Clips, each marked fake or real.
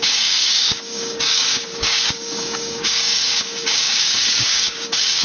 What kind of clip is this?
fake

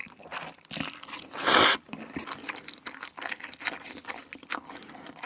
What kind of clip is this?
real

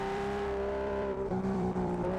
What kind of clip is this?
fake